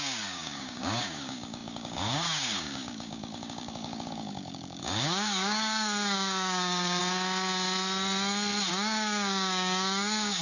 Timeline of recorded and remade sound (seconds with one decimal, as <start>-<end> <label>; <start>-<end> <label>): 0.0-7.0 remade; 7.0-8.7 recorded; 8.7-10.4 remade